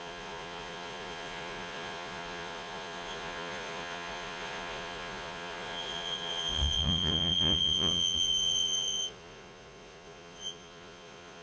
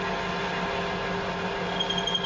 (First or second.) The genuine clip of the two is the second